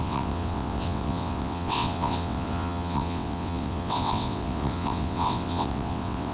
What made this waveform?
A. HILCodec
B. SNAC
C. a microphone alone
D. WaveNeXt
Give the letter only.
D